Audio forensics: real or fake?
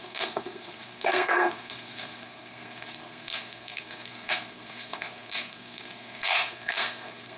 fake